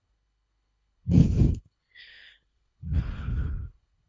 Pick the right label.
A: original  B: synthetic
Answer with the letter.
B